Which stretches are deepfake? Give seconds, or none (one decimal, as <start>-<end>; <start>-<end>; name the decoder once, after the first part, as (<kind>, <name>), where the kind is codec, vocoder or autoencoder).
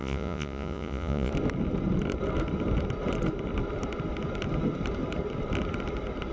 0.0-1.3 (vocoder, Vocos)